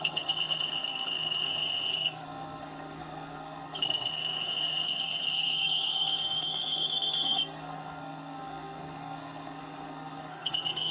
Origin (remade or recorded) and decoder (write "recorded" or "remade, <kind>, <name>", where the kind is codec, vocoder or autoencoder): remade, codec, SNAC